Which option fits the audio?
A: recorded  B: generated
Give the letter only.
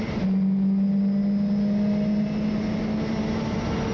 A